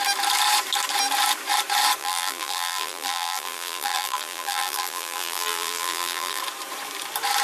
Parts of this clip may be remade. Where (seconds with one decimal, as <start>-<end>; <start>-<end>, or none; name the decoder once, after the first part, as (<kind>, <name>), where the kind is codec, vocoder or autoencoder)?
2.0-6.4 (vocoder, BigVGAN v2)